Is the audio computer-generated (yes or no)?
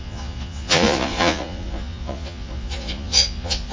yes